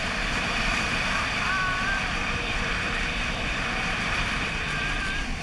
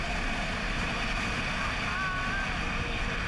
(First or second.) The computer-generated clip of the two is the first